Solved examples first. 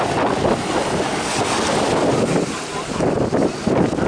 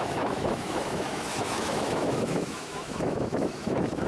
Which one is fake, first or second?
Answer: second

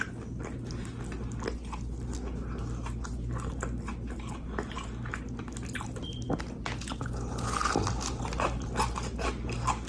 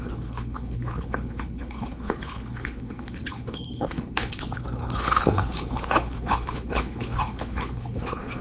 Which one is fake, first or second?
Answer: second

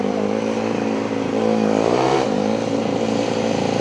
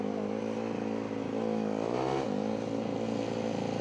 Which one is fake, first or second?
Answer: first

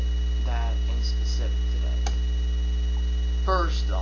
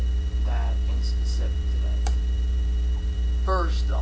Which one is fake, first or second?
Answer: second